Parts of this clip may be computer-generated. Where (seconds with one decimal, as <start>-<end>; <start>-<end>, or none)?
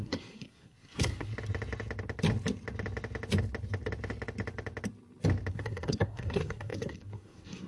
0.0-1.3; 5.5-7.7